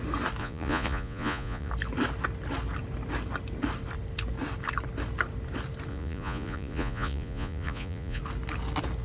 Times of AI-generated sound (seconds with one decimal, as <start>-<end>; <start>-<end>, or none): 0.4-1.7; 5.9-8.2